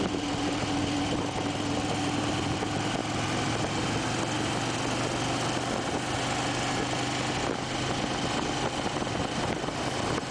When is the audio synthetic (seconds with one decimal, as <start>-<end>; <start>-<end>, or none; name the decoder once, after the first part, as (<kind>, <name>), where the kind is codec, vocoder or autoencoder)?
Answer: none